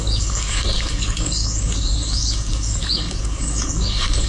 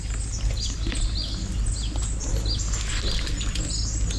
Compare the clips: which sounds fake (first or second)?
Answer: first